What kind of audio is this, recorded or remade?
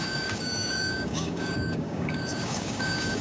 remade